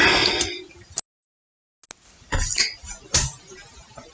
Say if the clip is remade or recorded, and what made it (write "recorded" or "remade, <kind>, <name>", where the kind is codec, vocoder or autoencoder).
recorded